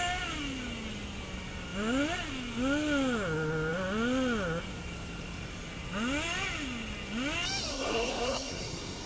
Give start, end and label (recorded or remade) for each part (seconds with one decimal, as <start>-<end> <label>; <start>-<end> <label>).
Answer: 0.0-7.7 recorded; 7.7-9.1 remade